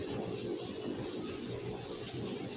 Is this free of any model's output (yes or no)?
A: no